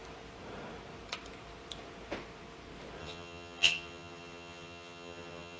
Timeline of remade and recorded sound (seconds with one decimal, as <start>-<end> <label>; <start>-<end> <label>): 0.0-3.0 recorded; 3.0-5.6 remade